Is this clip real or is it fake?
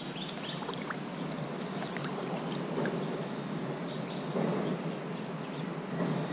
real